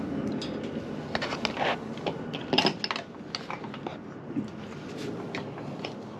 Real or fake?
real